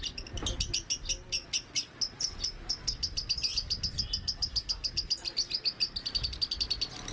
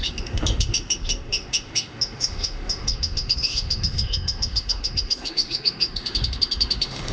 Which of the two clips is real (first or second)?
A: first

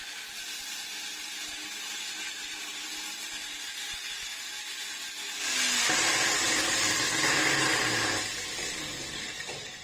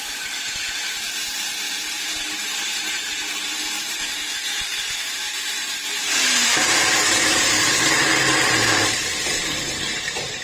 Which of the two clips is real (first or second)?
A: first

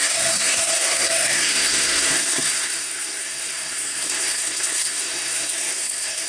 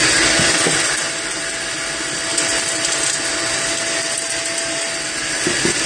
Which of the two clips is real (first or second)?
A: second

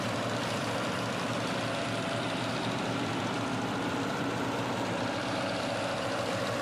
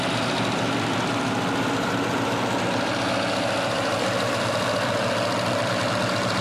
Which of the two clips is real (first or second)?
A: second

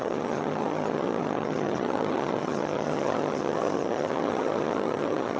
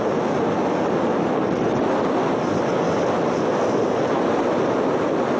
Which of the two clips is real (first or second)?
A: second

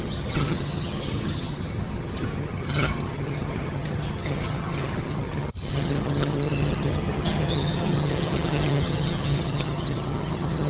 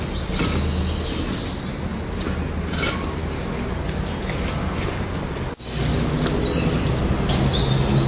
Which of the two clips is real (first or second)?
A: second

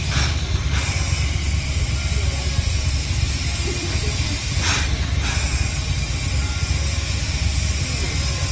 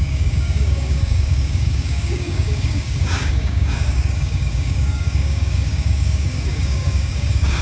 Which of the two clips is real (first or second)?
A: first